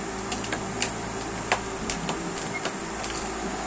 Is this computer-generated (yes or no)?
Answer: no